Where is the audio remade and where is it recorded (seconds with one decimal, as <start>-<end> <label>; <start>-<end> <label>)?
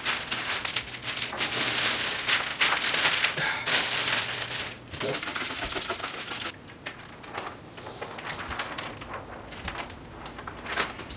0.0-2.5 recorded; 2.5-5.5 remade; 5.5-11.2 recorded